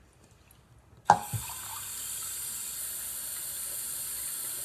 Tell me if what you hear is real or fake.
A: real